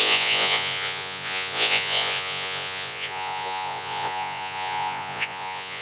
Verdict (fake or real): fake